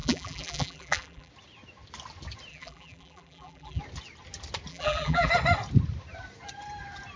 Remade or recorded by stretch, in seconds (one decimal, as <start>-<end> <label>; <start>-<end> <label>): 0.0-1.3 remade; 1.3-2.5 recorded; 2.5-3.8 remade; 3.8-4.7 recorded; 4.7-5.3 remade; 5.3-7.2 recorded